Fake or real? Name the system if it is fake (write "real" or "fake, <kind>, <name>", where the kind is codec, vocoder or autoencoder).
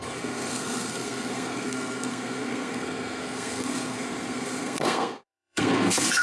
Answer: fake, codec, SNAC